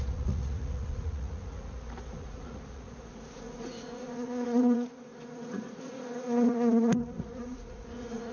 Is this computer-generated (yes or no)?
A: yes